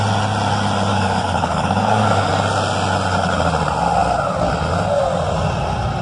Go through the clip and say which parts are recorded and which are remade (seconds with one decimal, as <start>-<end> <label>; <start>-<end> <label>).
0.0-0.9 recorded; 0.9-2.3 remade; 2.3-6.0 recorded